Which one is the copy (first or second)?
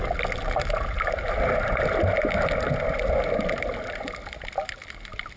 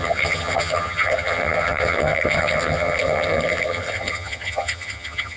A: second